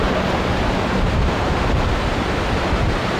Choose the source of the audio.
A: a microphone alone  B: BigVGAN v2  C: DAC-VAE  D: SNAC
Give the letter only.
A